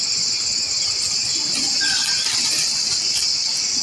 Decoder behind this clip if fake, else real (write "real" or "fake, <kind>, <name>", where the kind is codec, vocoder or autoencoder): real